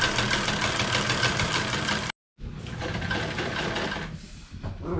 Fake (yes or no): no